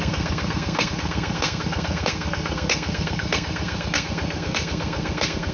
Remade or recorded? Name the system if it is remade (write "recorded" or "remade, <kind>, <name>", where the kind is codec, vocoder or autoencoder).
remade, codec, SNAC